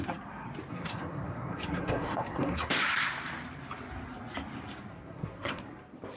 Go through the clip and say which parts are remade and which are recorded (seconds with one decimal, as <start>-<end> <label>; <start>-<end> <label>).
0.0-0.7 recorded; 0.7-2.7 remade; 2.7-4.9 recorded; 4.9-5.6 remade; 5.6-6.2 recorded